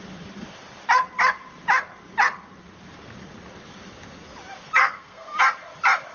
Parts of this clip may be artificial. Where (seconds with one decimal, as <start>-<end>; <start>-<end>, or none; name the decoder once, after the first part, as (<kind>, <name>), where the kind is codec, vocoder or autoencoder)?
4.8-5.4 (codec, SNAC)